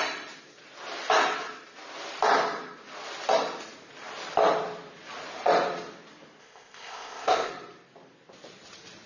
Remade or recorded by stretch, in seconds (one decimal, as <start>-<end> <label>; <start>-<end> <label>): 0.0-6.4 recorded; 6.4-7.5 remade; 7.5-9.1 recorded